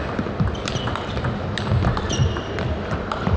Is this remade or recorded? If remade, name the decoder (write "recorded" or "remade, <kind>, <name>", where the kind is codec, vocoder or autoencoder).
remade, vocoder, BigVGAN v2